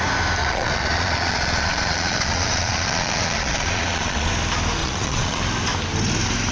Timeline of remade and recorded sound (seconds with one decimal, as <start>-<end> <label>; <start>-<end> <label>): 0.0-0.4 recorded; 0.4-4.3 remade; 4.3-4.8 recorded; 4.8-5.4 remade; 5.4-6.5 recorded